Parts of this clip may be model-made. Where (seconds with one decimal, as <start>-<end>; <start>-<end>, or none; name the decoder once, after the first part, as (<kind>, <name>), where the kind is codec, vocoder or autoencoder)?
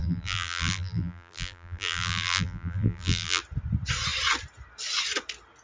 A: 0.0-3.4 (vocoder, BigVGAN v2)